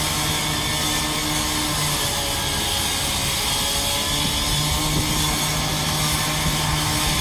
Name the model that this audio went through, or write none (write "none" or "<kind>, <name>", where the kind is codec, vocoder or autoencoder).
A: none